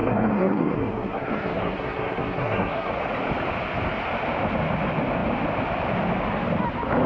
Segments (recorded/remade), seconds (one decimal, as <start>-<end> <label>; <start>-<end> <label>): 0.0-2.9 remade; 2.9-7.1 recorded